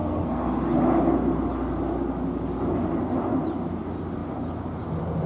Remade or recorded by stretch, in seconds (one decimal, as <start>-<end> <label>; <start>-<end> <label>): 0.0-0.6 remade; 0.6-5.3 recorded